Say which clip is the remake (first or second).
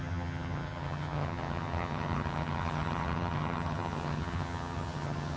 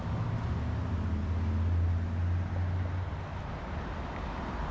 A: first